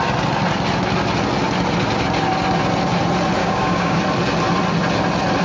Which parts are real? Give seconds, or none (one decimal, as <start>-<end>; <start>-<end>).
0.0-3.4; 4.0-5.4